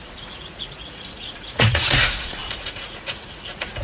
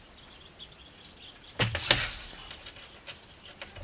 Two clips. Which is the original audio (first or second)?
second